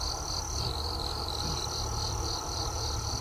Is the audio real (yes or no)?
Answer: no